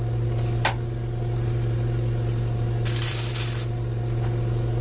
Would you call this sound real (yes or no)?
yes